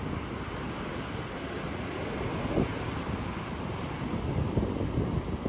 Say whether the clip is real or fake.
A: real